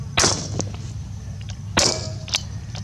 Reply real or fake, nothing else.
real